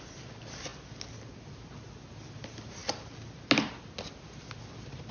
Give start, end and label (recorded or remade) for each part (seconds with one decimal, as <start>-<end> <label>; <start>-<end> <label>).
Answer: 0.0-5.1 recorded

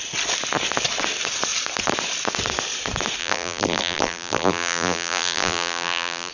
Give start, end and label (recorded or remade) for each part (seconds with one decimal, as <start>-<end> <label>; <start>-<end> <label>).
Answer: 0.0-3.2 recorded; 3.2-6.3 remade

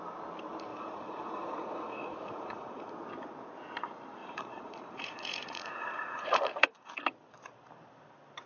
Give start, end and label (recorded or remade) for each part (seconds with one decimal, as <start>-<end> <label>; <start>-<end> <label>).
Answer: 0.0-0.7 recorded; 0.7-2.9 remade; 2.9-4.2 recorded; 4.2-6.9 remade; 6.9-8.5 recorded

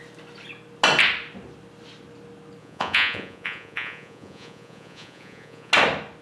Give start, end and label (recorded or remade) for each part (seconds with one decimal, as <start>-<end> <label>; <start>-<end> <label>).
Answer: 0.0-2.6 recorded; 2.6-5.7 remade; 5.7-6.2 recorded

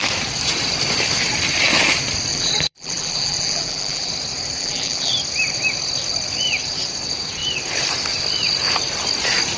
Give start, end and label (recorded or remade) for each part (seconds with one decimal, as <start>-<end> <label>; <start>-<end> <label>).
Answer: 0.0-2.3 recorded; 2.3-4.1 remade; 4.1-4.6 recorded; 4.6-5.1 remade; 5.1-9.6 recorded

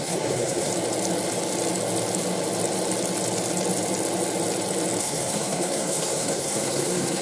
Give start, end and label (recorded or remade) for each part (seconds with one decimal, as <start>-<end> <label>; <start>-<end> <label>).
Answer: 0.0-0.7 remade; 0.7-5.0 recorded; 5.0-7.2 remade